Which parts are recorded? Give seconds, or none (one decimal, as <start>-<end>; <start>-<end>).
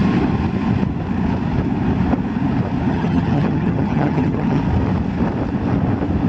0.0-2.9; 4.6-6.3